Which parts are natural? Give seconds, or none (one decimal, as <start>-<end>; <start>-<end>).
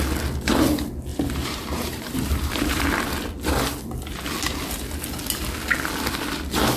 0.0-1.1; 2.8-6.8